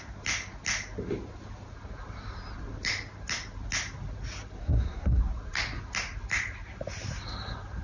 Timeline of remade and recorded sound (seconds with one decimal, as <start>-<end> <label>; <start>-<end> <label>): 0.0-4.6 recorded; 4.6-5.2 remade; 5.2-7.8 recorded